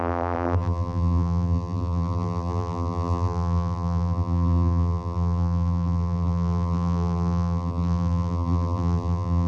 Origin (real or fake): fake